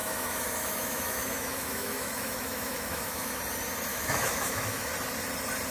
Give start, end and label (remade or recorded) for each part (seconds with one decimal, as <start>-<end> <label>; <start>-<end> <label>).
0.0-3.4 remade; 3.4-3.9 recorded; 3.9-4.9 remade; 4.9-5.7 recorded